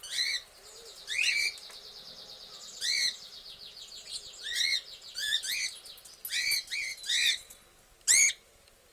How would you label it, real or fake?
real